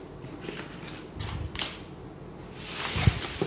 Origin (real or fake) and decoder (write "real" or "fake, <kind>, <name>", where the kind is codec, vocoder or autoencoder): real